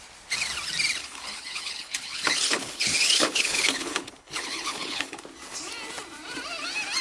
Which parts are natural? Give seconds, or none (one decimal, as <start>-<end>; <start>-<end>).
0.0-1.0; 5.2-7.0